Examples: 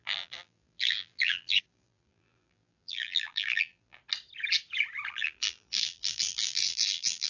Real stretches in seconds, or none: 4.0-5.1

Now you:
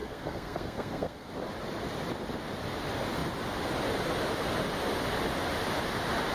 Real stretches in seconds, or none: 1.3-6.3